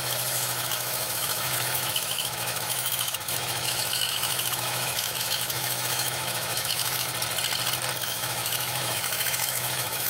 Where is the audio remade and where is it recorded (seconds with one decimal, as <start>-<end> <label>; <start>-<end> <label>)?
0.0-7.1 remade; 7.1-8.0 recorded; 8.0-10.1 remade